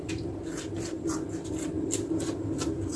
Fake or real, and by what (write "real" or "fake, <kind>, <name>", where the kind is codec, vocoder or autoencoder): fake, vocoder, BigVGAN v2